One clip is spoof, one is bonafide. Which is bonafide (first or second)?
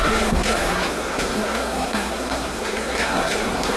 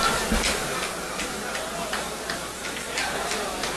second